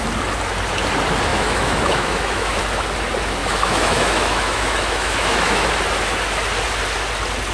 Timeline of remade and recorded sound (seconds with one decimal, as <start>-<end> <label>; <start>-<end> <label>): 0.0-1.3 recorded; 1.3-2.6 remade; 2.6-3.4 recorded; 3.4-5.7 remade; 5.7-7.5 recorded